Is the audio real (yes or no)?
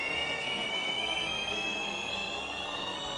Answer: no